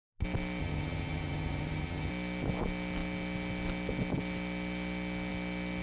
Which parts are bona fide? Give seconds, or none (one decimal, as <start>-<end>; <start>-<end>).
0.0-0.6; 2.1-5.8